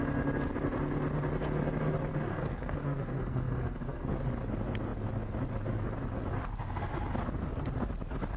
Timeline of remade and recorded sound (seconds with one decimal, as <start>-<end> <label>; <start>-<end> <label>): 0.0-2.3 recorded; 2.3-4.2 remade; 4.2-8.4 recorded